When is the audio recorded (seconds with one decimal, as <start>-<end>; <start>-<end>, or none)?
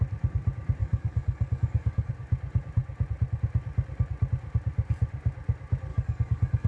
0.0-0.8; 2.1-5.9